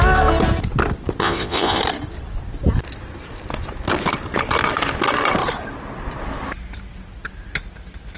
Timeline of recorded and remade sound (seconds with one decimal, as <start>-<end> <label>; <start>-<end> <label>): 0.0-1.2 recorded; 1.2-1.8 remade; 1.8-8.2 recorded